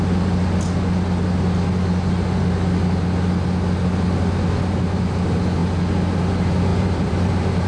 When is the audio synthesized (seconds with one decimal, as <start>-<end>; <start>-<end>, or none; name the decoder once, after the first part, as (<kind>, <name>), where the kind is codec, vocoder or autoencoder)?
6.7-7.3 (vocoder, BigVGAN v2)